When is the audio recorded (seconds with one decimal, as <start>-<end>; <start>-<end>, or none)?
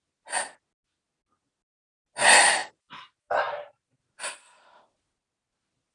0.0-2.6; 4.1-5.9